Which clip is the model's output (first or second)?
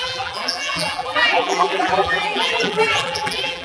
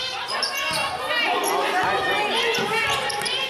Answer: first